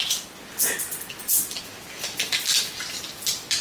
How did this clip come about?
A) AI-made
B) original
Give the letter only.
B